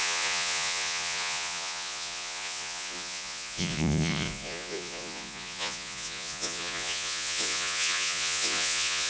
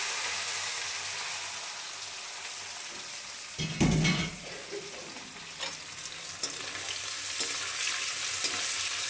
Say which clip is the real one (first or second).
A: second